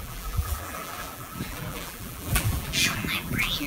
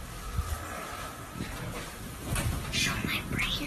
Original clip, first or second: second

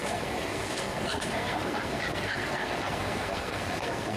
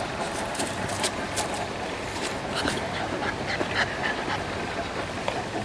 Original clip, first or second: second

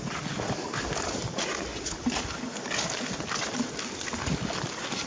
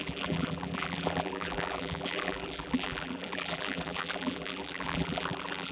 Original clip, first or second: first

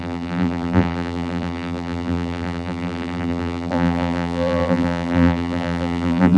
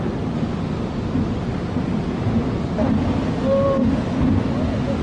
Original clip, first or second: second